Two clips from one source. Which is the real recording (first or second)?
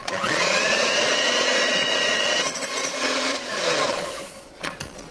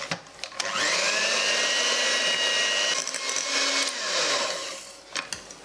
second